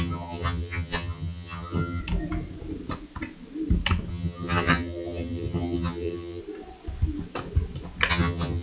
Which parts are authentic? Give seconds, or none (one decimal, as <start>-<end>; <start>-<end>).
2.0-4.1; 6.4-8.1